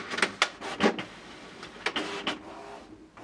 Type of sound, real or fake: real